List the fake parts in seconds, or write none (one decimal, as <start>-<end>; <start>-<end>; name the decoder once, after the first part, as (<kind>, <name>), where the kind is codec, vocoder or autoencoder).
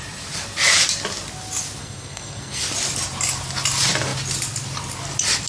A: 1.8-2.6 (codec, SNAC)